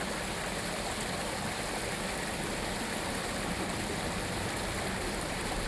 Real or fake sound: real